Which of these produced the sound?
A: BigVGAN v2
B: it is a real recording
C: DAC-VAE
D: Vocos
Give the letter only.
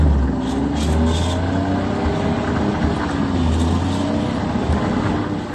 B